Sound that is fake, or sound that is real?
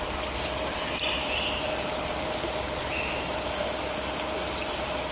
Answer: real